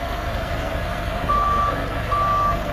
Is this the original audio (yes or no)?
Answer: no